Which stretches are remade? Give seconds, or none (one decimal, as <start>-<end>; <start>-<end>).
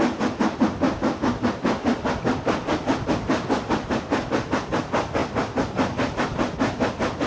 5.2-7.3